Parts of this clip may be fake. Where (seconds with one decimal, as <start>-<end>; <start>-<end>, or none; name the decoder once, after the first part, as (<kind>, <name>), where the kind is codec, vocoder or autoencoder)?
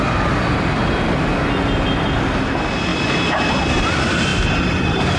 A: none